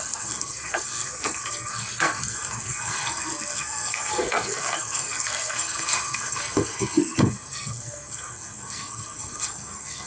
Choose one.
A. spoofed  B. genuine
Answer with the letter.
A